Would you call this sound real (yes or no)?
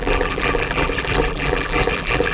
no